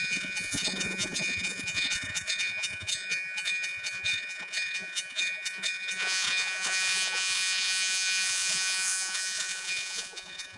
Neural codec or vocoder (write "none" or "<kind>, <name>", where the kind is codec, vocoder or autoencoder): vocoder, Vocos